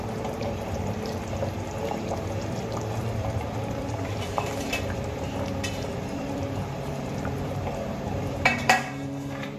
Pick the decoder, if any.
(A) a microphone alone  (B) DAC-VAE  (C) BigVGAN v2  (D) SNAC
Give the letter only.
C